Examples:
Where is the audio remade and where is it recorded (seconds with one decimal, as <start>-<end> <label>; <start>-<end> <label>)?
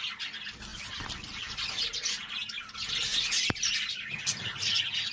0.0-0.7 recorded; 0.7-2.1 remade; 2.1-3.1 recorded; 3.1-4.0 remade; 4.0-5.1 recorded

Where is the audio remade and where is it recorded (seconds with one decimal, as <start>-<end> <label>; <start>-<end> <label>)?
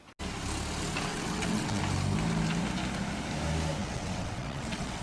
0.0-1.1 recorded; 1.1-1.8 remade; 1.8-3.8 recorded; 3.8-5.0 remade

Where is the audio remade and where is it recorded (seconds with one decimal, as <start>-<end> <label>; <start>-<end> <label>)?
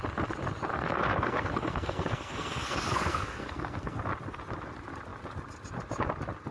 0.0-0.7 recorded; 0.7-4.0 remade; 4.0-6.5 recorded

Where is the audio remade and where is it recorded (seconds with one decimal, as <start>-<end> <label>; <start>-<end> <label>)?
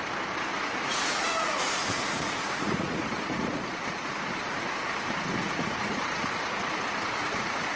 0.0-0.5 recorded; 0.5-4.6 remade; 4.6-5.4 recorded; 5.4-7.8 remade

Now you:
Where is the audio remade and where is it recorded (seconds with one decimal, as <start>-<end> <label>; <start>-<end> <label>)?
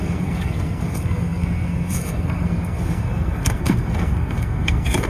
0.0-5.1 remade